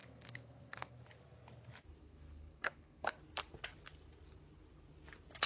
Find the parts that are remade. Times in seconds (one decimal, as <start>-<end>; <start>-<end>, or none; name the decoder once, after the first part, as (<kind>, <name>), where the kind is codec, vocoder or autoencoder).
0.0-1.0 (codec, SNAC); 2.0-3.2